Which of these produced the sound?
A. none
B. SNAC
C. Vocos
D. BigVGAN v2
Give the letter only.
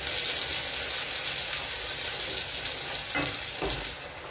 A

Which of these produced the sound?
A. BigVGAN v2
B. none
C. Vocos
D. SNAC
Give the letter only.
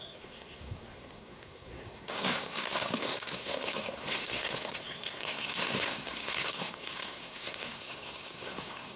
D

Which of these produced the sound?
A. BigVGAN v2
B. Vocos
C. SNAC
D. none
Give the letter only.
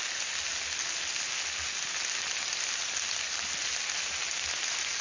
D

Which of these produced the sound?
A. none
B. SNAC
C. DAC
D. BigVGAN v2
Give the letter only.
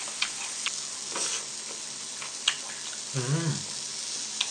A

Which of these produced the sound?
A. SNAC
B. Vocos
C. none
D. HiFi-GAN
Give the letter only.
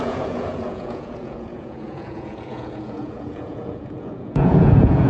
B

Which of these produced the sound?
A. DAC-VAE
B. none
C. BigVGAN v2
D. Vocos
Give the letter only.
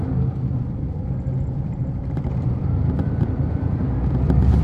C